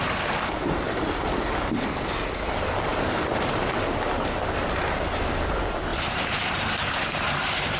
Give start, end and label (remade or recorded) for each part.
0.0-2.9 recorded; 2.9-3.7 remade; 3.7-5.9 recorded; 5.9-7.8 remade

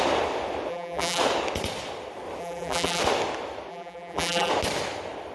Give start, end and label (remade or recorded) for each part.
0.0-0.7 recorded; 0.7-1.2 remade; 1.2-2.4 recorded; 2.4-3.0 remade; 3.0-3.7 recorded; 3.7-4.5 remade; 4.5-5.3 recorded